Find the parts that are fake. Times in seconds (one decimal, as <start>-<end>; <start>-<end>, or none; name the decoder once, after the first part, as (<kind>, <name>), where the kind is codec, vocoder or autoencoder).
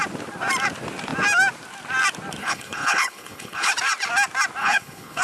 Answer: 2.4-3.7 (codec, HILCodec); 4.6-5.2